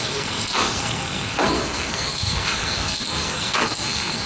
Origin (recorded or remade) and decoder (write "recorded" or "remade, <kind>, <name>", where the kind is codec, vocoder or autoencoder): remade, codec, SNAC